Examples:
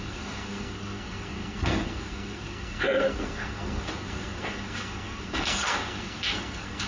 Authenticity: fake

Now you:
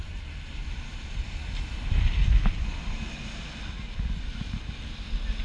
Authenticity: real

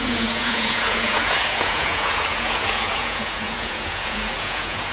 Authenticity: fake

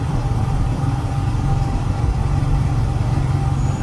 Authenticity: fake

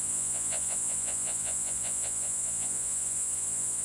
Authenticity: fake